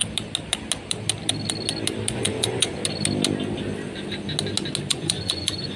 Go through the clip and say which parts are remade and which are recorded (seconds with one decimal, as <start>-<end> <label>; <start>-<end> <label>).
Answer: 0.0-2.1 recorded; 2.1-2.8 remade; 2.8-4.9 recorded; 4.9-5.8 remade